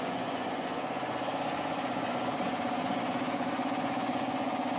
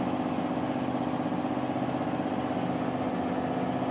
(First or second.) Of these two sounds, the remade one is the first